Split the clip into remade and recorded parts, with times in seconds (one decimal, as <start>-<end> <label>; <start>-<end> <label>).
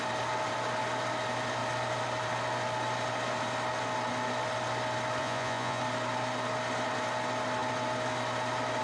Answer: 0.0-5.2 recorded; 5.2-5.8 remade; 5.8-8.8 recorded